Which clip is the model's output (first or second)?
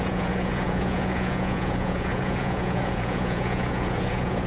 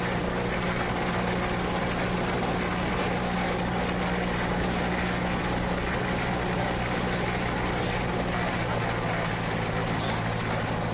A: first